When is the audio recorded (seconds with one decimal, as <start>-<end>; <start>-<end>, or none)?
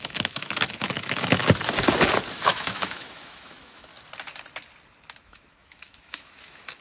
1.4-2.3; 3.9-5.2